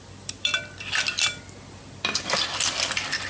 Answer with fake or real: real